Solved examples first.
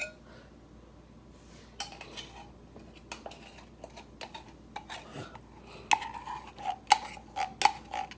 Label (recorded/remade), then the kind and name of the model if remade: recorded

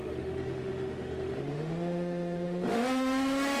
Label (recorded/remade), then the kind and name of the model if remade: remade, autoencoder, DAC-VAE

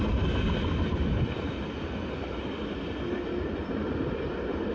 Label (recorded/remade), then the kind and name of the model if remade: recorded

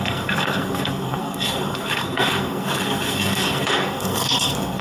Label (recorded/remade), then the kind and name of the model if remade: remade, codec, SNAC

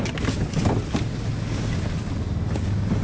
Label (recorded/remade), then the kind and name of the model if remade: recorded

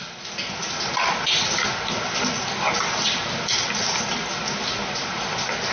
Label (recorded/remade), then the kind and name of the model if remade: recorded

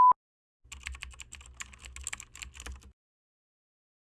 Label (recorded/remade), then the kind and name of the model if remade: recorded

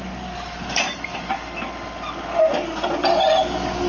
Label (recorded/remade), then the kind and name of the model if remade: recorded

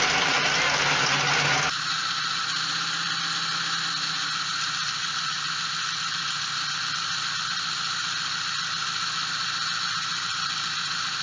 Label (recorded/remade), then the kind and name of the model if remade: recorded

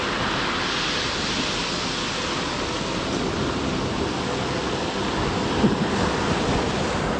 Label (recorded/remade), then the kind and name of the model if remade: recorded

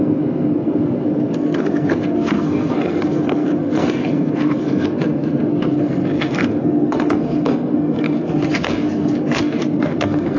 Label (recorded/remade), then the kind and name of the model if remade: remade, codec, SNAC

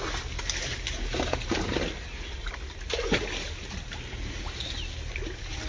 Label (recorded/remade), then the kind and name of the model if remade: recorded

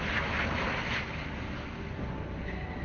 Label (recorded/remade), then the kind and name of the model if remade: recorded